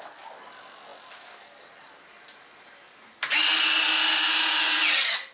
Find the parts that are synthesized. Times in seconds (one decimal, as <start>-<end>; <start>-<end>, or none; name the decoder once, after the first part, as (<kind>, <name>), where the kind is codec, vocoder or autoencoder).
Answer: none